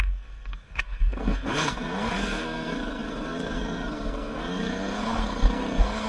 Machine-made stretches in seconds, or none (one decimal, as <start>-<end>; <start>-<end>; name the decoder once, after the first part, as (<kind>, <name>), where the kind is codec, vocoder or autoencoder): 0.0-6.1 (codec, SNAC)